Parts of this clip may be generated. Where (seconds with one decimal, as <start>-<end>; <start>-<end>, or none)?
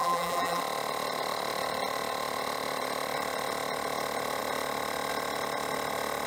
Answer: 0.0-0.6